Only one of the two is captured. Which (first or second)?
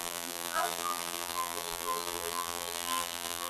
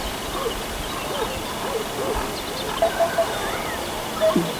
second